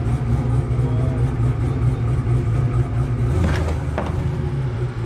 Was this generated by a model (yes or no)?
no